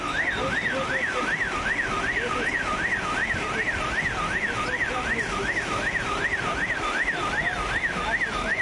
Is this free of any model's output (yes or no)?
yes